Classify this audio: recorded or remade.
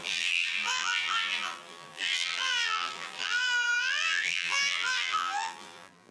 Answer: remade